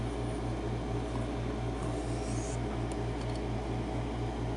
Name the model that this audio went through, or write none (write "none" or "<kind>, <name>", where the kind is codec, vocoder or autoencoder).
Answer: none